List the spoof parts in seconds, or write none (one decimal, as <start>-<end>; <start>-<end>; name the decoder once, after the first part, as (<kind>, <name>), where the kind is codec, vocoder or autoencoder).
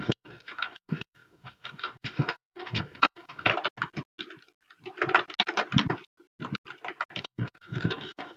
0.0-3.5 (codec, DAC); 7.2-8.4